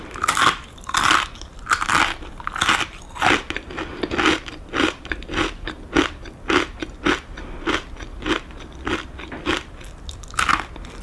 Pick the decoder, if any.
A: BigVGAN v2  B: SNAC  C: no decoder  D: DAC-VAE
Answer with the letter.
C